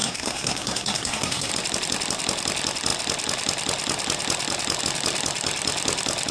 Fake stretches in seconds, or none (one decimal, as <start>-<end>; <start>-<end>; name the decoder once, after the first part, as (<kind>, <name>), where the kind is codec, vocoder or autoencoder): 0.0-1.5 (codec, SNAC)